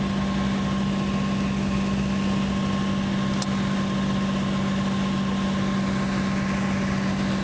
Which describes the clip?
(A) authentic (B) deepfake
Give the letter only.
A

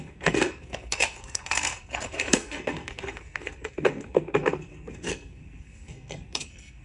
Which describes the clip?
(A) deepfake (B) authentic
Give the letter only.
A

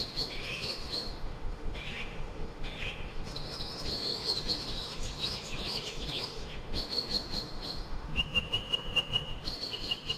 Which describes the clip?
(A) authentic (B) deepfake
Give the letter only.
B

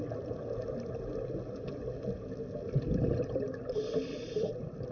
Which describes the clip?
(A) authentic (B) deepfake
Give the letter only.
A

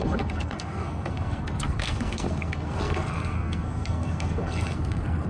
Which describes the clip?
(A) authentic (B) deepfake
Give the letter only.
B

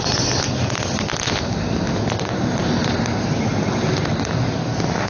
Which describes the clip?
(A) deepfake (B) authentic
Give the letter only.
B